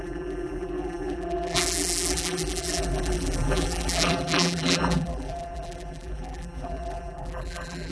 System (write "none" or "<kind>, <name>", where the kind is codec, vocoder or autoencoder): vocoder, BigVGAN v2